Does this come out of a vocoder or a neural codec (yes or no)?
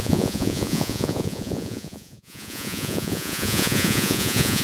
yes